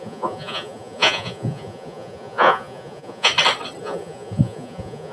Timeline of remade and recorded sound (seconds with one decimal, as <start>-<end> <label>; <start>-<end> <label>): 0.0-3.3 remade; 3.3-3.8 recorded; 3.8-5.1 remade